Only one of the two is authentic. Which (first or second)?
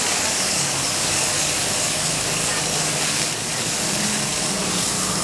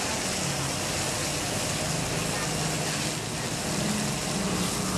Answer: second